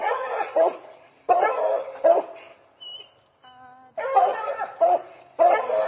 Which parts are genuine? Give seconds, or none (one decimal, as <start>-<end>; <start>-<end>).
1.2-4.3; 5.2-5.9